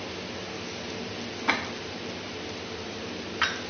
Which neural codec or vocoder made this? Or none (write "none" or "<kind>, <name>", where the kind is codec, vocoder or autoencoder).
none